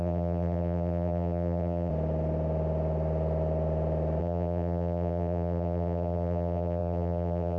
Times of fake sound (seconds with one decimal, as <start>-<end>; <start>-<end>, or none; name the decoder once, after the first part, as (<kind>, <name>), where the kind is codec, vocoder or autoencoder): 0.0-1.9 (vocoder, BigVGAN v2); 4.2-7.6